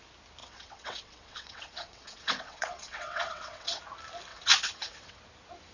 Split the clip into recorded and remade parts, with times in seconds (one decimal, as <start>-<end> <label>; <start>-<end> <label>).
0.0-0.4 recorded; 0.4-3.8 remade; 3.8-4.3 recorded; 4.3-5.2 remade; 5.2-5.7 recorded